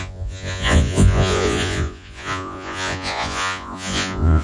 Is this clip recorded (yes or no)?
no